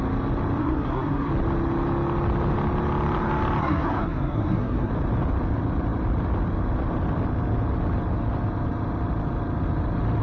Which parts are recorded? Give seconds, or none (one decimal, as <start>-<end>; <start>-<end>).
0.0-0.6; 1.3-3.6; 4.9-10.2